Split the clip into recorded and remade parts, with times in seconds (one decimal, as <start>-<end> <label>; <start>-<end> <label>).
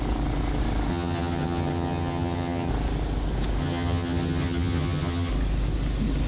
0.0-0.9 recorded; 0.9-2.7 remade; 2.7-3.6 recorded; 3.6-5.3 remade; 5.3-6.3 recorded